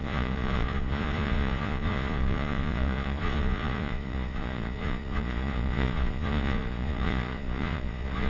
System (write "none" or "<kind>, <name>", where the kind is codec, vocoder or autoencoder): vocoder, Vocos